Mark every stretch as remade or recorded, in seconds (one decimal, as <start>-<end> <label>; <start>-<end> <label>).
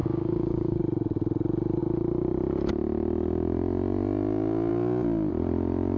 0.0-0.8 remade; 0.8-6.0 recorded